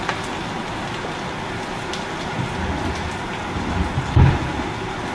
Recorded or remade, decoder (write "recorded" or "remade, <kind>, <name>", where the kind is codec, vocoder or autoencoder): recorded